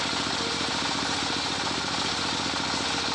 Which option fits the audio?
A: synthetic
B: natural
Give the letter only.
B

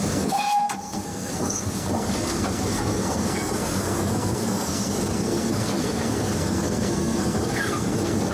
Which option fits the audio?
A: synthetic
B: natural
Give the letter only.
A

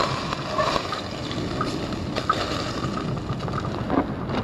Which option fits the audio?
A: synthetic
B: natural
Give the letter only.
B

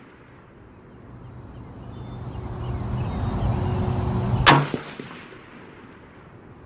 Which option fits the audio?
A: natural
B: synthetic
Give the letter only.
A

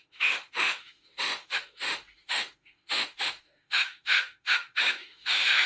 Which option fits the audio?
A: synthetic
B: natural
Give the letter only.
A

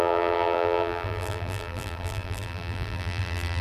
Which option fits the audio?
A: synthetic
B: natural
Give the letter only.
A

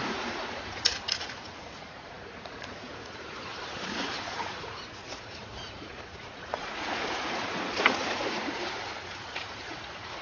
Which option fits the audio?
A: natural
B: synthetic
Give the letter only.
B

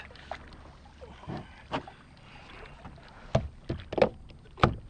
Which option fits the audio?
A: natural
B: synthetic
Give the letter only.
A